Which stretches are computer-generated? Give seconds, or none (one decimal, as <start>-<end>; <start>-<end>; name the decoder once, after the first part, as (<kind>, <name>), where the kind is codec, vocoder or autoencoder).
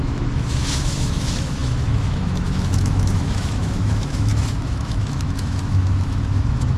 0.0-6.8 (autoencoder, DAC-VAE)